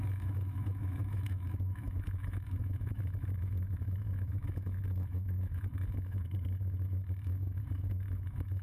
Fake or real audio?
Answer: fake